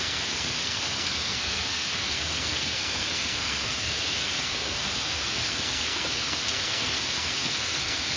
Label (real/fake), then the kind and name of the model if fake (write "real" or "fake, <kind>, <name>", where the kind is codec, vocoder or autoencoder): fake, codec, SNAC